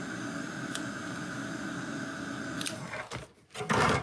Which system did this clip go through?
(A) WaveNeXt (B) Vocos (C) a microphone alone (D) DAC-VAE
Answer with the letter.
C